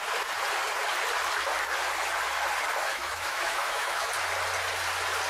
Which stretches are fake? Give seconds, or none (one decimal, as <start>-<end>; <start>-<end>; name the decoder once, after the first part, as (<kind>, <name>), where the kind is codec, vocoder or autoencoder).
2.9-4.1 (autoencoder, DAC-VAE)